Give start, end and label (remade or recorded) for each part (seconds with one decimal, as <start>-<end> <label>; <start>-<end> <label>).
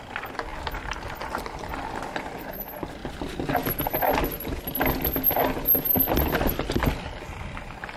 0.0-8.0 recorded